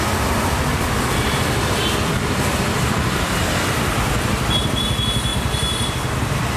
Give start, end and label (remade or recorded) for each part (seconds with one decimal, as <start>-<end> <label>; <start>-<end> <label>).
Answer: 0.0-5.3 remade; 5.3-5.9 recorded; 5.9-6.6 remade